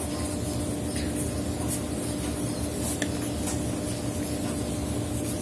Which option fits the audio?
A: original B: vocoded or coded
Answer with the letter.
A